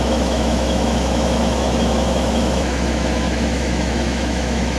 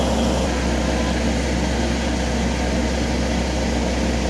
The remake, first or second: first